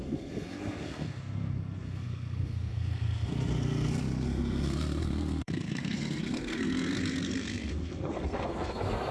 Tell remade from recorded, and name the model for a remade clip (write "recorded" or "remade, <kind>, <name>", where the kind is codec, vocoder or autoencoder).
remade, codec, SNAC